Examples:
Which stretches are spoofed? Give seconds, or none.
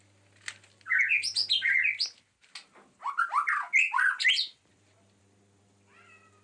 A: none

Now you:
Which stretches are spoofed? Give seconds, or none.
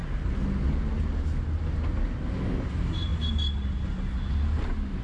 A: none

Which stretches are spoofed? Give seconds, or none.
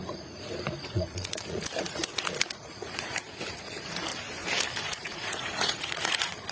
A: 0.0-4.1 (vocoder, Vocos); 4.8-6.5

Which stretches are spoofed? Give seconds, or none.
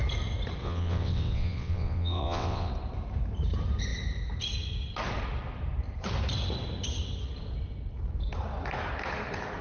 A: 0.6-2.7 (vocoder, WaveNeXt)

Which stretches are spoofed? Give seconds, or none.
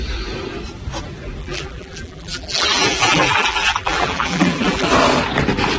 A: 1.4-4.9 (vocoder, BigVGAN v2)